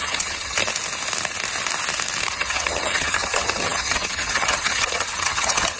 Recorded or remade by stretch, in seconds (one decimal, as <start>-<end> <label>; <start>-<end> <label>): 0.0-0.6 remade; 0.6-2.3 recorded; 2.3-5.8 remade